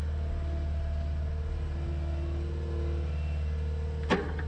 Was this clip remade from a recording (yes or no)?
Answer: no